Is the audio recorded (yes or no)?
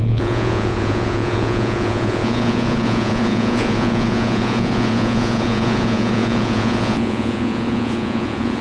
no